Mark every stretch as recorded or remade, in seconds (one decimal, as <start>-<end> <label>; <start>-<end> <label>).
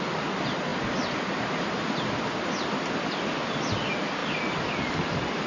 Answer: 0.0-5.5 recorded